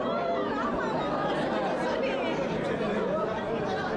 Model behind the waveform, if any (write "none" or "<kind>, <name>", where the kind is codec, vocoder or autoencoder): none